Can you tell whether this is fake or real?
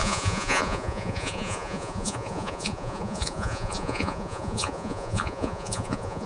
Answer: fake